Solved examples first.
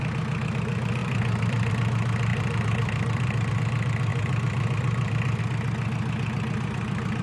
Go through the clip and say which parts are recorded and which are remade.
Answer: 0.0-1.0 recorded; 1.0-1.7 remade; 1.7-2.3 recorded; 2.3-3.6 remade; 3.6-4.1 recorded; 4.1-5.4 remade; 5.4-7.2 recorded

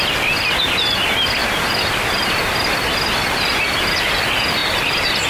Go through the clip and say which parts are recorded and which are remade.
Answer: 0.0-5.3 recorded

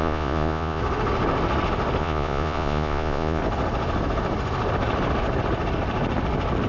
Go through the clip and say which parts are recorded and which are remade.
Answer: 0.0-0.8 remade; 0.8-2.0 recorded; 2.0-3.4 remade; 3.4-6.7 recorded

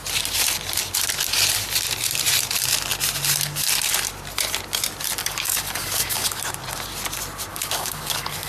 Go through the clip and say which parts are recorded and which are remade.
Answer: 0.0-5.2 recorded; 5.2-6.4 remade; 6.4-7.5 recorded; 7.5-8.5 remade